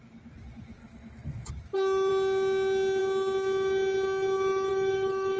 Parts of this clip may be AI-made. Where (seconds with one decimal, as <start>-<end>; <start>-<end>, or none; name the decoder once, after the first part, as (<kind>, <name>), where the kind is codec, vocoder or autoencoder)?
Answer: 0.8-1.5 (autoencoder, DAC-VAE); 4.7-5.4